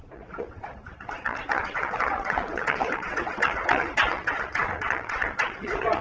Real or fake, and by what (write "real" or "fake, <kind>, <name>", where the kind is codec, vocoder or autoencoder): fake, vocoder, WaveNeXt